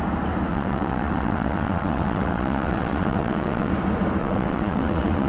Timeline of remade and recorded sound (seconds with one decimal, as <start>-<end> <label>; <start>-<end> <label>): 0.0-0.5 recorded; 0.5-3.7 remade; 3.7-4.2 recorded; 4.2-5.3 remade